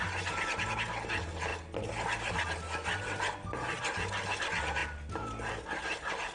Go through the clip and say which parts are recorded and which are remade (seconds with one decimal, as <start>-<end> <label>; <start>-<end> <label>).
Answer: 0.0-6.3 recorded